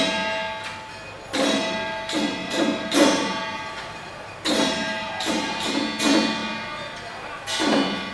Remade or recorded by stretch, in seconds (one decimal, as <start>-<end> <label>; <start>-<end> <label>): 0.0-2.4 recorded; 2.4-5.7 remade; 5.7-8.1 recorded